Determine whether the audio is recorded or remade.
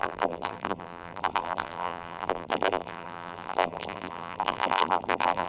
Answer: remade